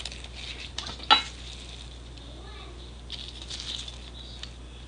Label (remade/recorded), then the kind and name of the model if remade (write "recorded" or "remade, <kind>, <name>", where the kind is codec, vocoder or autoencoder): recorded